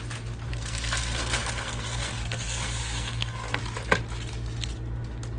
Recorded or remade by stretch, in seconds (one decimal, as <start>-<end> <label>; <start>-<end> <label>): 0.0-0.5 recorded; 0.5-3.6 remade; 3.6-5.4 recorded